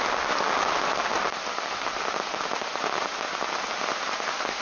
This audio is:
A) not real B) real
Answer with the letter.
B